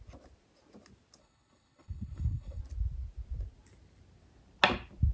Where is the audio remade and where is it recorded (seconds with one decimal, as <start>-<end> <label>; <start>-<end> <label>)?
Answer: 0.0-1.2 recorded; 1.2-2.6 remade; 2.6-5.1 recorded